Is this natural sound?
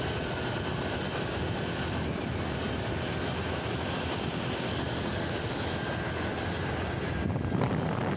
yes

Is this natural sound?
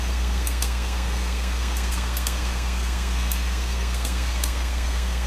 no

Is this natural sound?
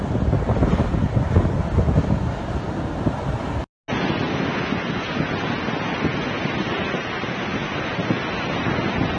yes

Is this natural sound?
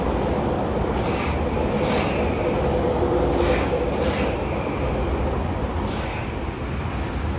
yes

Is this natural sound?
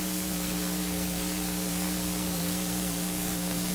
no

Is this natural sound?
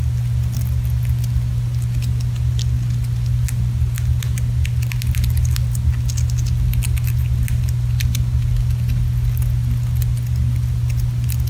yes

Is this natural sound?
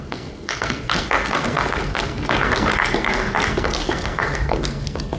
no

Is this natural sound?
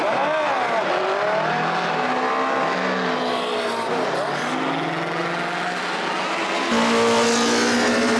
yes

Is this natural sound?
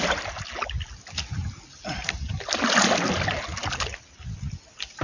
yes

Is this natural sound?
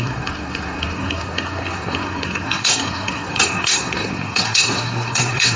no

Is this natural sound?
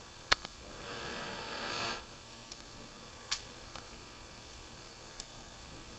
no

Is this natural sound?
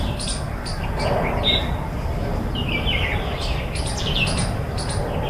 yes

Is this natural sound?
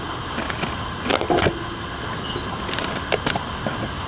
yes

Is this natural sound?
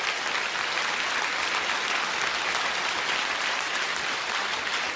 yes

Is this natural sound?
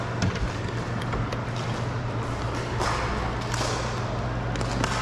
yes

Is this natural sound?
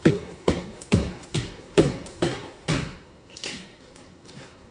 no